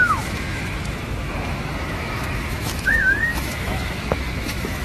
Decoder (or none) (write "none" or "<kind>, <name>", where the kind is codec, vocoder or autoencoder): autoencoder, DAC-VAE